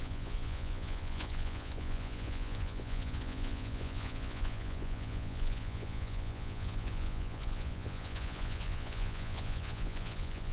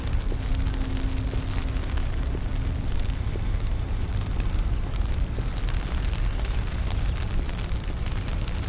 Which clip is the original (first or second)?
second